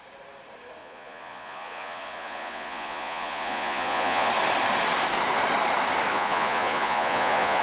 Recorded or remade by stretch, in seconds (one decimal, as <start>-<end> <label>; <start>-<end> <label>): 0.0-0.8 recorded; 0.8-4.3 remade; 4.3-6.1 recorded; 6.1-7.6 remade